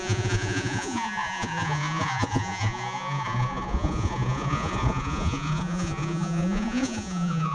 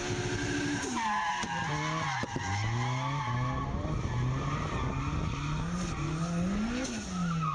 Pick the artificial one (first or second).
first